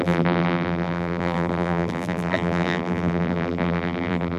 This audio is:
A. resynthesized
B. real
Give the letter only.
A